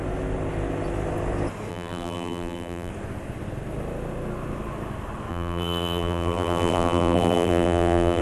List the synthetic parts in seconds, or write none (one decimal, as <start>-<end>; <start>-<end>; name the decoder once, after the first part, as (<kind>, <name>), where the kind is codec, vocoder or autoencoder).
1.7-2.9 (vocoder, BigVGAN v2); 5.3-8.2